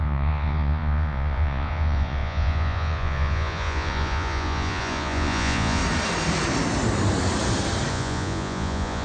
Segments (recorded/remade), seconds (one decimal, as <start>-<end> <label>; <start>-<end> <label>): 0.0-5.8 remade; 5.8-7.9 recorded; 7.9-9.0 remade